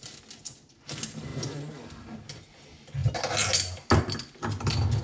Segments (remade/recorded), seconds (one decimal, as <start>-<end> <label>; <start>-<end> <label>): 0.0-5.0 recorded